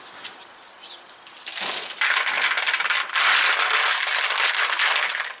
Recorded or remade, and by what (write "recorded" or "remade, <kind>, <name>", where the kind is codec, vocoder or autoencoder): recorded